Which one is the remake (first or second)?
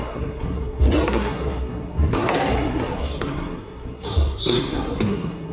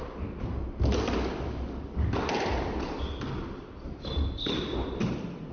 first